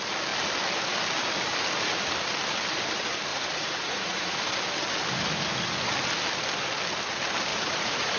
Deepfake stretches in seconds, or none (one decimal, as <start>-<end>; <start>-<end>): 3.3-4.4; 7.5-8.2